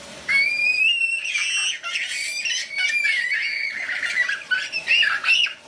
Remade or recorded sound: recorded